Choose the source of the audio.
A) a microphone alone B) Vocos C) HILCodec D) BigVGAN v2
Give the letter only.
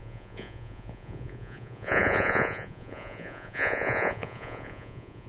B